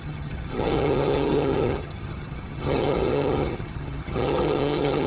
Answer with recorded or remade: remade